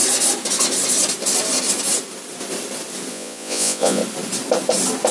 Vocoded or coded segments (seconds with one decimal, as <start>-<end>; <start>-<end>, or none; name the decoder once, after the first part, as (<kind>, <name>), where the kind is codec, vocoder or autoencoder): 3.1-4.0 (vocoder, Vocos)